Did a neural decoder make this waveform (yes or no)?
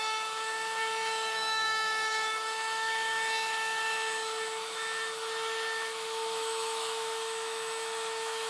yes